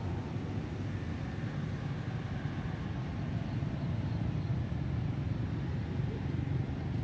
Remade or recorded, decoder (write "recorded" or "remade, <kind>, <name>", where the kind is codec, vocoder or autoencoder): recorded